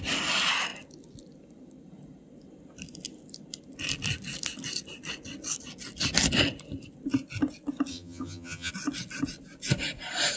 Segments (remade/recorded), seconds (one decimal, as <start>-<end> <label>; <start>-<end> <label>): 0.0-7.9 recorded; 7.9-8.7 remade; 8.7-10.4 recorded